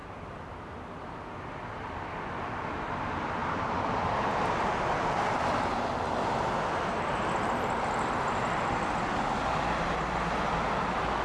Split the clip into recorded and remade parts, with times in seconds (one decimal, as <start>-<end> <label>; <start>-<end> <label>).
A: 0.0-1.3 remade; 1.3-3.4 recorded; 3.4-7.7 remade; 7.7-11.2 recorded